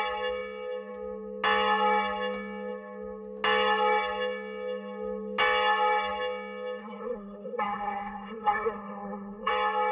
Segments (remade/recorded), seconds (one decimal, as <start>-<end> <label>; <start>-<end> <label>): 0.0-6.8 recorded; 6.8-9.5 remade; 9.5-9.9 recorded